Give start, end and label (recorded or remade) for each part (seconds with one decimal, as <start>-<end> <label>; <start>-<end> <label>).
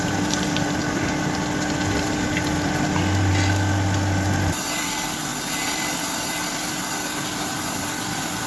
0.0-8.5 recorded